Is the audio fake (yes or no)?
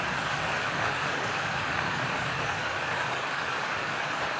yes